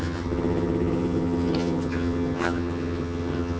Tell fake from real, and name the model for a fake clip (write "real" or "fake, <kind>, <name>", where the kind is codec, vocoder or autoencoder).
fake, vocoder, HiFi-GAN